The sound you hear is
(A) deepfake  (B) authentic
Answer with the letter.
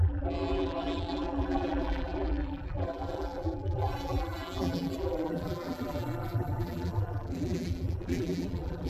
A